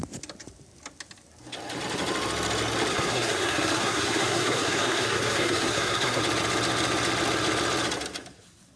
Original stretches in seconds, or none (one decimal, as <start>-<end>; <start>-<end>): 0.0-2.9; 6.2-8.8